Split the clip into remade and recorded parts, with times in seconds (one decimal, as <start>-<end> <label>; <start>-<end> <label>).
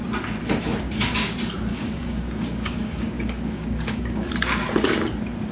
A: 0.0-1.7 recorded; 1.7-4.3 remade; 4.3-5.5 recorded